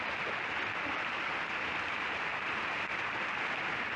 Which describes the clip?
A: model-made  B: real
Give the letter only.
B